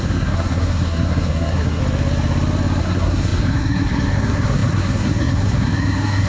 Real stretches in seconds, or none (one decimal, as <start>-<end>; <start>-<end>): 1.8-2.8